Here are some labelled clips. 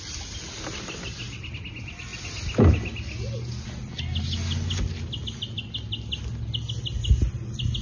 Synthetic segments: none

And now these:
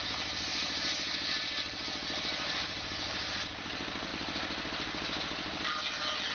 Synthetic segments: none

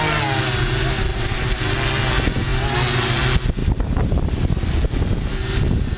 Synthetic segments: 1.1-1.6 (vocoder, BigVGAN v2); 3.6-4.5

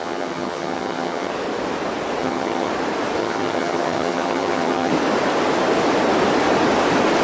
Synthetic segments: 0.0-1.3 (vocoder, HiFi-GAN); 2.2-2.7; 3.2-4.9

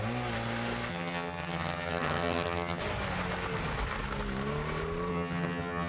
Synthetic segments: 0.9-2.8 (vocoder, HiFi-GAN); 5.1-5.9

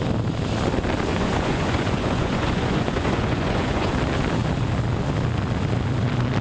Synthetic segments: 1.1-3.9 (vocoder, Vocos)

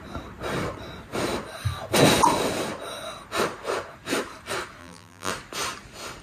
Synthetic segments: 4.8-5.3 (vocoder, BigVGAN v2)